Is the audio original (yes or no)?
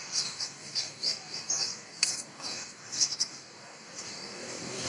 no